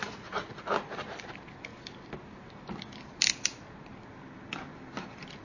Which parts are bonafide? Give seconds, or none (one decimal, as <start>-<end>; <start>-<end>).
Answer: 1.2-5.4